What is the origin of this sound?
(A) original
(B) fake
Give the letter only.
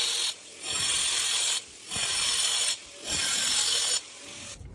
A